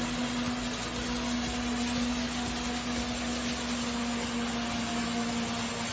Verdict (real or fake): real